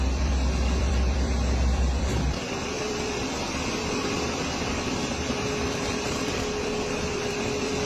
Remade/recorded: remade